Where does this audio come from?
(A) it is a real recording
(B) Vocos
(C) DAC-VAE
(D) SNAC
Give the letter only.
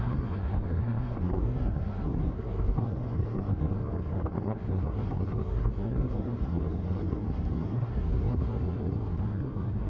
D